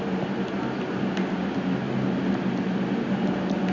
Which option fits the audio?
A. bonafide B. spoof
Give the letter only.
A